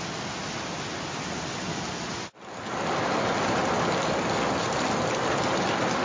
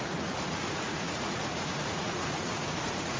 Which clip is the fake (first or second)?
second